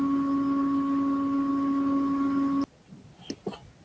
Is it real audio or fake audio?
real